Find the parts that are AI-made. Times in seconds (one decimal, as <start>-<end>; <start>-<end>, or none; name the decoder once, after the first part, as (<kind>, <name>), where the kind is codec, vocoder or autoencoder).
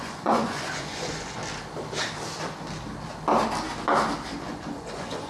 0.0-1.4 (vocoder, Vocos); 4.4-5.3